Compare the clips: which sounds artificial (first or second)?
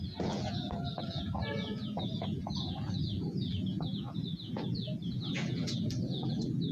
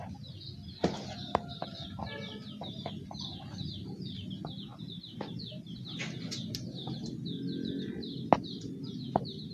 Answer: first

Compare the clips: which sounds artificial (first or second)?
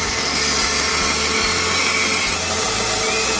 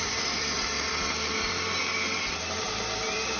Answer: second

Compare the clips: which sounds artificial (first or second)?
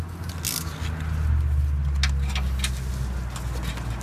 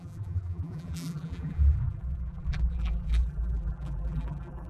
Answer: second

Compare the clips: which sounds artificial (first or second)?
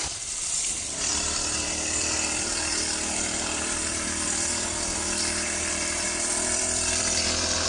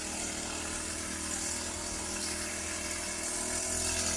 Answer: first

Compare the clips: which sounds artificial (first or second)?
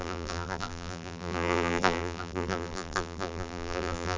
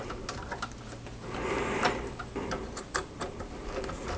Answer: first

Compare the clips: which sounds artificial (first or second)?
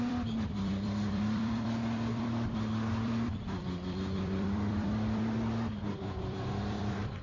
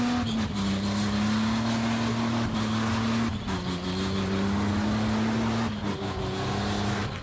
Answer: first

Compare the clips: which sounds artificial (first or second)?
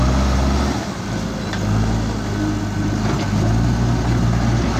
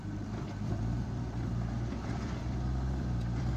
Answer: second